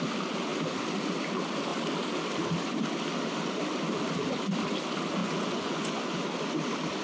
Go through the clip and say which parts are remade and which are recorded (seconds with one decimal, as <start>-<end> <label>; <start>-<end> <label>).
0.0-5.2 recorded; 5.2-6.2 remade; 6.2-7.0 recorded